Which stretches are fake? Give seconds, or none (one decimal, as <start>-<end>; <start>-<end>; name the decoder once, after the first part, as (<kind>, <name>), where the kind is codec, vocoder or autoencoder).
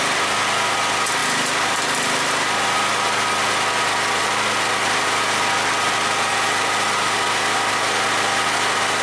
none